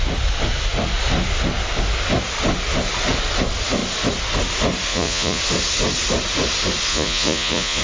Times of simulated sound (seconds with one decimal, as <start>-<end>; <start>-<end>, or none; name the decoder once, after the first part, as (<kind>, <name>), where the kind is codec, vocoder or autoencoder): 4.9-5.4 (vocoder, Vocos); 6.9-7.8